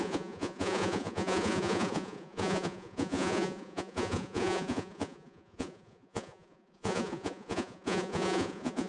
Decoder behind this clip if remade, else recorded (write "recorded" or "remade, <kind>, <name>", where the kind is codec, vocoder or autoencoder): remade, vocoder, Vocos